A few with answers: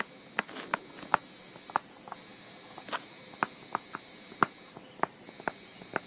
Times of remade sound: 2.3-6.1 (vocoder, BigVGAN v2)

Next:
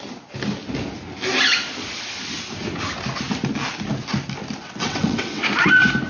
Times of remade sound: 4.6-5.4 (vocoder, WaveNeXt)

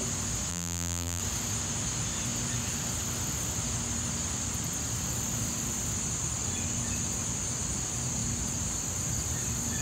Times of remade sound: 0.5-1.2 (vocoder, BigVGAN v2)